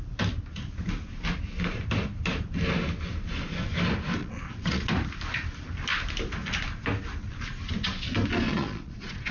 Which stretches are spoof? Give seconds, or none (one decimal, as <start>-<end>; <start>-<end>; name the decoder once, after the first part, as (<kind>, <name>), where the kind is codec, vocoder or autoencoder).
4.2-4.9 (vocoder, Vocos); 8.5-9.3